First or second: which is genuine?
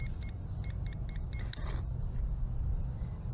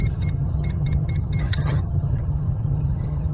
first